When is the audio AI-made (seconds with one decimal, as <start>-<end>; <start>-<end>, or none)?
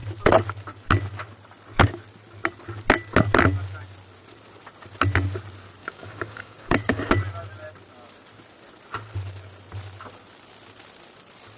5.8-7.1